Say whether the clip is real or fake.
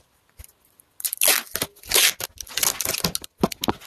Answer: real